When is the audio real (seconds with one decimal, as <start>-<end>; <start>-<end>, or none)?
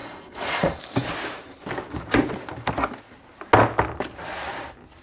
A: 0.8-5.0